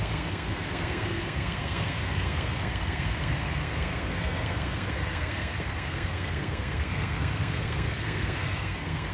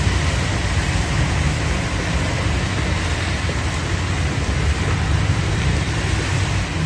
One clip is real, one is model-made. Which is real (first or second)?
second